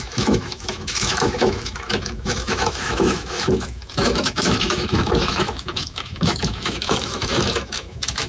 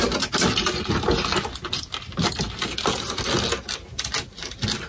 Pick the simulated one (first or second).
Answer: first